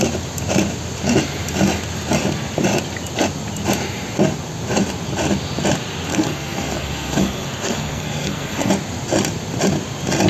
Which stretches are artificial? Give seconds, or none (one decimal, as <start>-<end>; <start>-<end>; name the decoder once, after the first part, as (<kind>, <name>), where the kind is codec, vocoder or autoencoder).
6.1-8.7 (codec, SNAC)